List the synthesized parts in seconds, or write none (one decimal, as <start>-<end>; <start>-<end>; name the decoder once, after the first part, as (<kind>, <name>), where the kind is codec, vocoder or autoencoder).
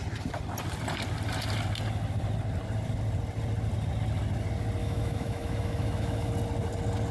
4.8-6.3 (autoencoder, DAC-VAE)